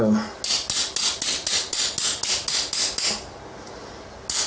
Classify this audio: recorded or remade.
recorded